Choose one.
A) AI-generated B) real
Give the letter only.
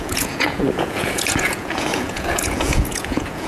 A